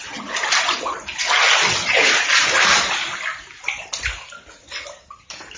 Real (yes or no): yes